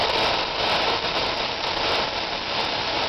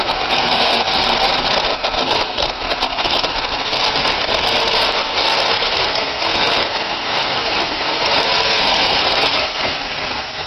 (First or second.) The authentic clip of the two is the first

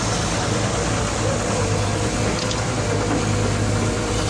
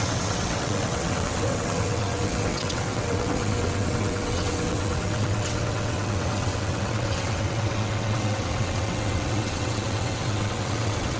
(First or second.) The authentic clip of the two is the first